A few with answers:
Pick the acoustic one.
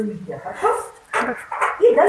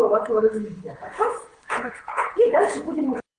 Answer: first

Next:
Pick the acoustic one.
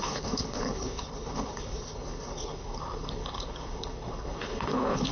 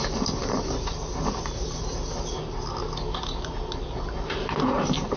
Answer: second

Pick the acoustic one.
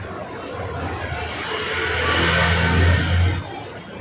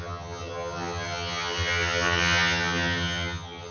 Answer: first